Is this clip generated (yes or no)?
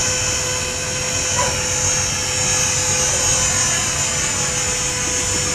no